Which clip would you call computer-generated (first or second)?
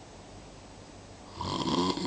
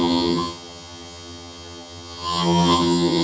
second